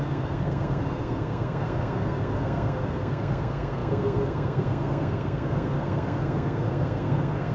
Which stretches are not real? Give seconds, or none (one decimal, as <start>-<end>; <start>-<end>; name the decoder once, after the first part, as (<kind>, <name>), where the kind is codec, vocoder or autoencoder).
0.0-7.5 (codec, SNAC)